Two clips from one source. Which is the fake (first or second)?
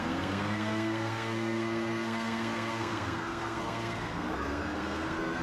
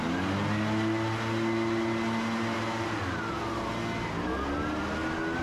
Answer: first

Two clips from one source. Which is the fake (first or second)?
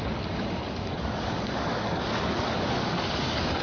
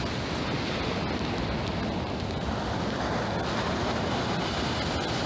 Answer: first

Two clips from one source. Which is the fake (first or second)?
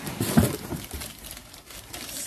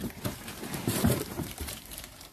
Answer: second